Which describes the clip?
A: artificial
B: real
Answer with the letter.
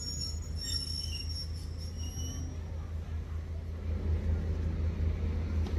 B